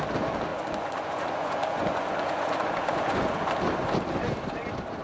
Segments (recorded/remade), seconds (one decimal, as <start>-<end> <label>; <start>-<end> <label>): 0.0-0.5 recorded; 0.5-3.5 remade; 3.5-5.0 recorded